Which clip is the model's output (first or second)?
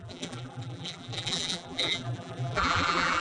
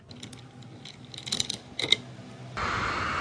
first